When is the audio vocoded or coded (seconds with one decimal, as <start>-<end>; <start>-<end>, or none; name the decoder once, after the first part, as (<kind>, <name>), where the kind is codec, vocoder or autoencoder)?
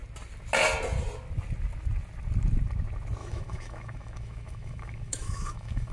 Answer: 3.2-5.9 (autoencoder, DAC-VAE)